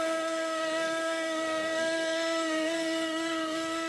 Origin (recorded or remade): remade